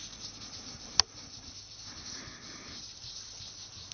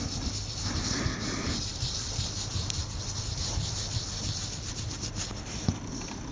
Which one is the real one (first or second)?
first